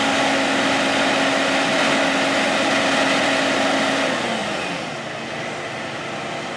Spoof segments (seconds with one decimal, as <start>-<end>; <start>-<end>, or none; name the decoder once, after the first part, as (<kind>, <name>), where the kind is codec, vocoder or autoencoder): none